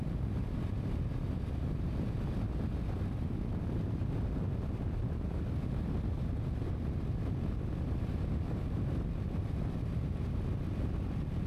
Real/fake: real